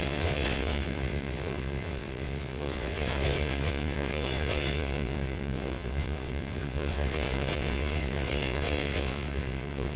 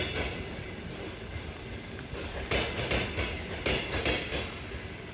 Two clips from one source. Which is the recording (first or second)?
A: second